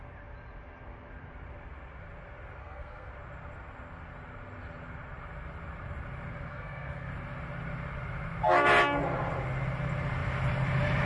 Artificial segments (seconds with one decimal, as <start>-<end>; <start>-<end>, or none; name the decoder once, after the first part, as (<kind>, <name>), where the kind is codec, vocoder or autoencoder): 2.6-3.1 (codec, SNAC); 6.5-7.1